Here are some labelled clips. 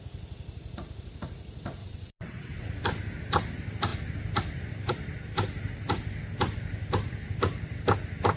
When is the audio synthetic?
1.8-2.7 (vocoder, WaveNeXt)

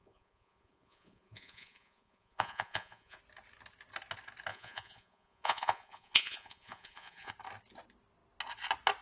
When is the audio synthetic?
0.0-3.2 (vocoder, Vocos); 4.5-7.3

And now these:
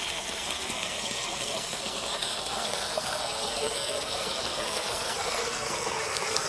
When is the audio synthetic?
0.0-6.5 (codec, SNAC)